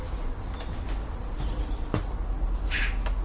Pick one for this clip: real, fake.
real